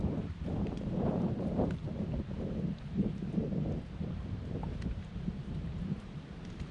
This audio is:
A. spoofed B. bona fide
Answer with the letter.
A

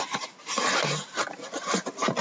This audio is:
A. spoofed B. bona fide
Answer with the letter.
B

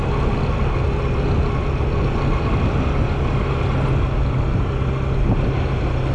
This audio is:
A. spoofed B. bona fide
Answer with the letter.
B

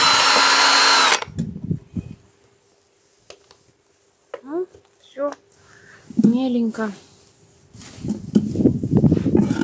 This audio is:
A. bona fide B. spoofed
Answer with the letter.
A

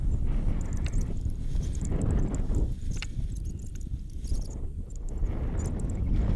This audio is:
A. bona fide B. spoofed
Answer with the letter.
A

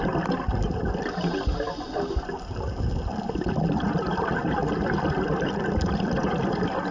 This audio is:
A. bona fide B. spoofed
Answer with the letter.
A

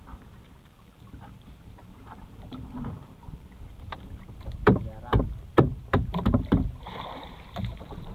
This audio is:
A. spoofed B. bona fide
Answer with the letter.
A